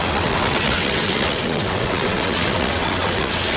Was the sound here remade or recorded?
remade